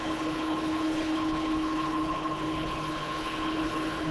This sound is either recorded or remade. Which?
remade